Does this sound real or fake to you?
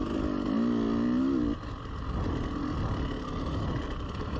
real